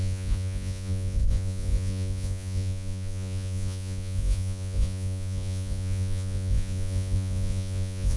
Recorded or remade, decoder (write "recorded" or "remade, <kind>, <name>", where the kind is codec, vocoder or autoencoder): remade, vocoder, Vocos